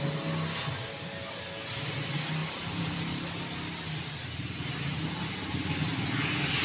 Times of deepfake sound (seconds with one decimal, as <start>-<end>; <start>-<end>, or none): 2.4-3.2